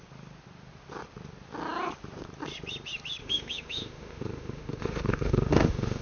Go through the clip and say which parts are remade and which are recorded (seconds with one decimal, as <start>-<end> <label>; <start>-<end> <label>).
0.0-3.2 recorded; 3.2-6.0 remade